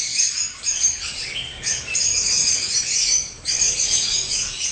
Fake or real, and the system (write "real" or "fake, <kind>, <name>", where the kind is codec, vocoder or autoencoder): fake, codec, DAC